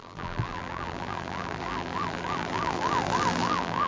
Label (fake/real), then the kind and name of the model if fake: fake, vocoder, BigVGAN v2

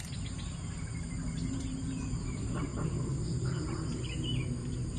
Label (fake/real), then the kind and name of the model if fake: real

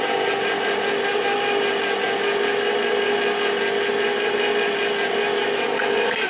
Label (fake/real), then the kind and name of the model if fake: real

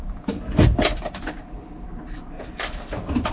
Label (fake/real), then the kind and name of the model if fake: real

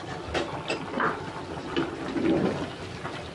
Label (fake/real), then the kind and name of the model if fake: real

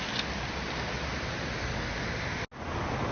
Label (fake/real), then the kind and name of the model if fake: real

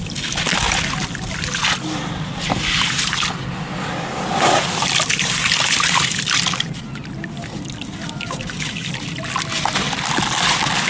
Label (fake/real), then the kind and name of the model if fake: real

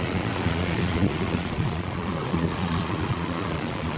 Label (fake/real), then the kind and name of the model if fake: fake, vocoder, Vocos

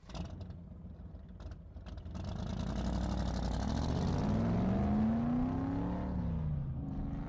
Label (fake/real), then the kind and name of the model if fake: real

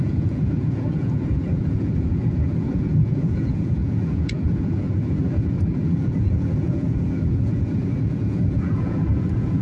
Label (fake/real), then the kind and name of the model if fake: fake, vocoder, Vocos